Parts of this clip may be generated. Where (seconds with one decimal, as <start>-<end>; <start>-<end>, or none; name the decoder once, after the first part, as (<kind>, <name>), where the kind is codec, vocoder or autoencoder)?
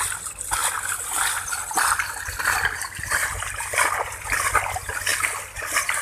none